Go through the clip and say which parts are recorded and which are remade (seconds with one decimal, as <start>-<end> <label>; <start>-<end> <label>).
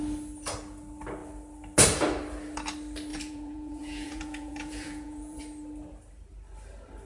0.0-3.1 recorded; 3.1-5.4 remade; 5.4-7.1 recorded